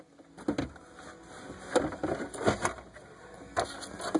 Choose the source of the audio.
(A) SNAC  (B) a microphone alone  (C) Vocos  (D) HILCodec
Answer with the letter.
B